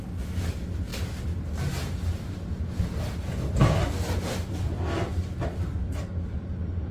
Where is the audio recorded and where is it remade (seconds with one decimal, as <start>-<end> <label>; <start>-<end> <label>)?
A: 0.0-6.9 recorded

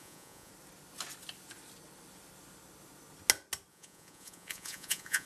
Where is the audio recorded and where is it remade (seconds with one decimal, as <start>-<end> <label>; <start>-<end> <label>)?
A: 0.0-0.5 remade; 0.5-3.7 recorded; 3.7-5.3 remade

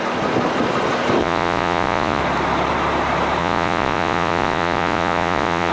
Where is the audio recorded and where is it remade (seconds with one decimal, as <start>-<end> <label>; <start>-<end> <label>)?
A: 0.0-1.2 recorded; 1.2-2.2 remade; 2.2-3.4 recorded; 3.4-5.7 remade

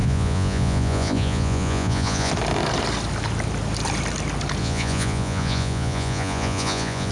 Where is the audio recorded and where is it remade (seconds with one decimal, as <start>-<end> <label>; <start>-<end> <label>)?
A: 0.0-2.3 remade; 2.3-4.6 recorded; 4.6-7.1 remade

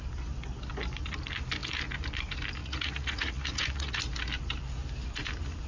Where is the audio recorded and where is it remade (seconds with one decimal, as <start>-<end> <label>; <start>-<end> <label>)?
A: 0.0-2.6 recorded; 2.6-4.0 remade; 4.0-5.7 recorded